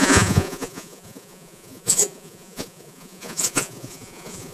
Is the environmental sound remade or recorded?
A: remade